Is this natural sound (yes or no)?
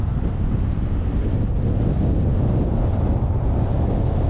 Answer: yes